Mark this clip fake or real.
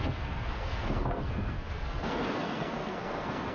fake